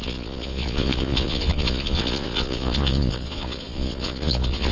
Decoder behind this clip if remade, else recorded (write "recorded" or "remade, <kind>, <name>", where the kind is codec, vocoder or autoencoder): remade, vocoder, Vocos